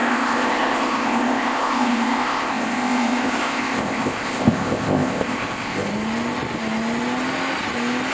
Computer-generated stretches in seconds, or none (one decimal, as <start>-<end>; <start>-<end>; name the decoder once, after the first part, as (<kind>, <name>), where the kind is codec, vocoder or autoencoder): 0.0-5.9 (codec, ZipCodec)